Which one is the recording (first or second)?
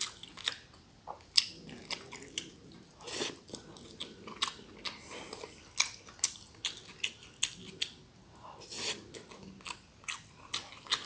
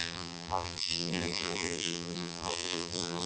first